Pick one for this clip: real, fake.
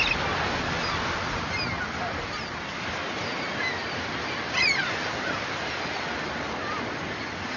real